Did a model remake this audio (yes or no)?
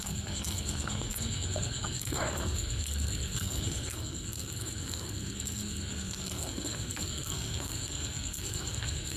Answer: yes